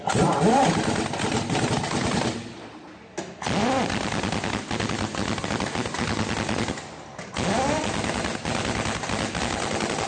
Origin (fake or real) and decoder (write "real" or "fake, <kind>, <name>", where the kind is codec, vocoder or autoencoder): real